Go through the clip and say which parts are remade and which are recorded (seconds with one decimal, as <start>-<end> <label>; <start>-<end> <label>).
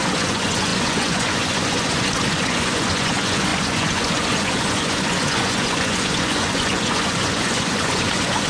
0.0-8.5 remade